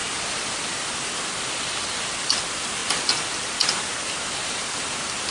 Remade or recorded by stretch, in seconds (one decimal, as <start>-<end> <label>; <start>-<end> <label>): 0.0-5.3 recorded